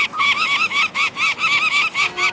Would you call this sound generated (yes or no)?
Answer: no